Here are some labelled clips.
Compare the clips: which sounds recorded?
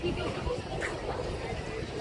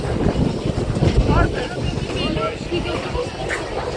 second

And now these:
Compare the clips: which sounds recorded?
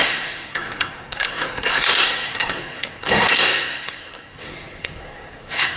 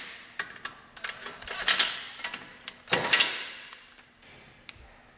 second